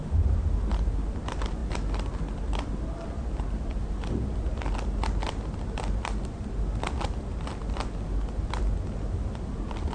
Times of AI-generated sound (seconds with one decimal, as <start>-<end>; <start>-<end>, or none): none